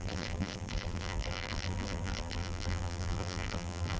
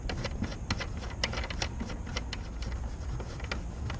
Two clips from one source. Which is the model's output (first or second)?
first